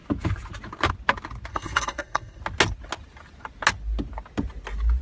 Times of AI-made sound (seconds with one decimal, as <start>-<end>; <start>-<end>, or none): 1.5-2.4